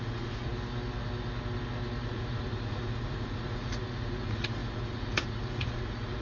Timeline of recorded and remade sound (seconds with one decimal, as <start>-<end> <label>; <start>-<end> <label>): 0.0-0.5 remade; 0.5-2.1 recorded; 2.1-6.2 remade